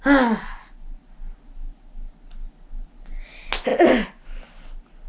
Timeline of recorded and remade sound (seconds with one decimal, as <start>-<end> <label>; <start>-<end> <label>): 0.0-5.1 recorded